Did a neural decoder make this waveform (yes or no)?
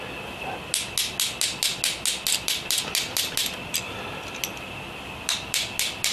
no